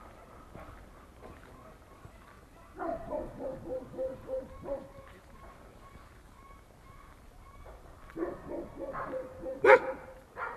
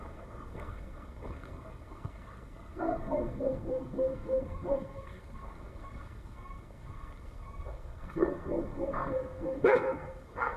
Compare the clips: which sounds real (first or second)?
first